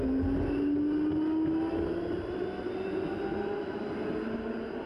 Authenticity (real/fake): real